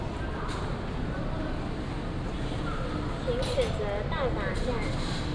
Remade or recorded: recorded